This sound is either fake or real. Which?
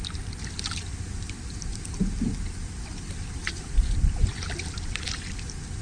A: real